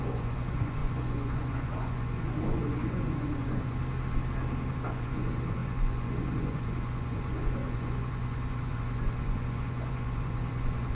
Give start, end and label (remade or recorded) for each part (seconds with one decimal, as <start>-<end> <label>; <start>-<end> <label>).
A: 0.0-3.8 remade; 3.8-4.7 recorded; 4.7-10.9 remade